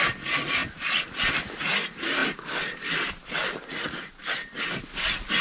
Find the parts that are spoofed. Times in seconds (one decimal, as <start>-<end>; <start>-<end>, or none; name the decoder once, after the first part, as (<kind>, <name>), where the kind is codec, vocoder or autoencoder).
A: 2.2-4.6 (vocoder, BigVGAN v2)